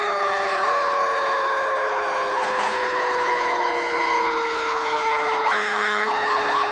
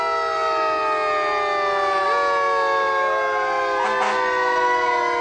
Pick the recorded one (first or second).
second